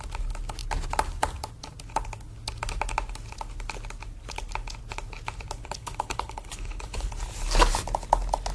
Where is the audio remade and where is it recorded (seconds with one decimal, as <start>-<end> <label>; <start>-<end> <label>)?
0.0-5.6 recorded; 5.6-7.1 remade; 7.1-8.5 recorded